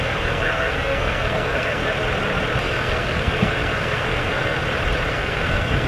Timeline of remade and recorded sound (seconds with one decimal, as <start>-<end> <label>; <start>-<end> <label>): 0.0-1.8 remade; 1.8-2.6 recorded; 2.6-4.6 remade; 4.6-5.1 recorded; 5.1-5.9 remade